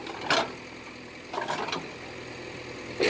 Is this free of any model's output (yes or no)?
yes